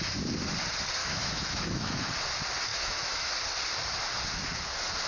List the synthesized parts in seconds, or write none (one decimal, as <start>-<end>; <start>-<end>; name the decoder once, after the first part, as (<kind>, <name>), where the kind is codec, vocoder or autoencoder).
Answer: 1.0-2.1 (autoencoder, DAC-VAE); 2.7-3.3